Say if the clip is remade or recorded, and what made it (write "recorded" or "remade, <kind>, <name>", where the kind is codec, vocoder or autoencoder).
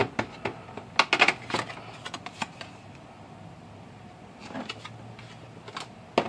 recorded